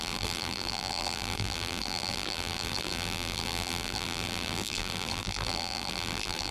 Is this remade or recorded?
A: remade